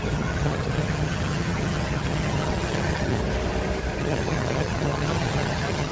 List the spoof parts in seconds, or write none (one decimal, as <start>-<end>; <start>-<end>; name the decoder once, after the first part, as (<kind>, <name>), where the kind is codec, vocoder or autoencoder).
0.0-3.2 (vocoder, HiFi-GAN); 4.0-5.9